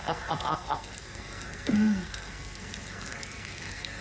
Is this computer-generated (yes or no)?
yes